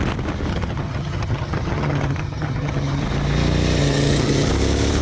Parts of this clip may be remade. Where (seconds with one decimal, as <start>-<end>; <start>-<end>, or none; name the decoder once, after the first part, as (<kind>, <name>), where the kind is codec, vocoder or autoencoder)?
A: 0.5-3.0 (vocoder, HiFi-GAN); 3.8-4.5